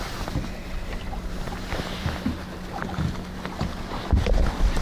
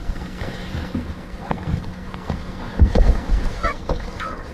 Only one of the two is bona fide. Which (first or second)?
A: first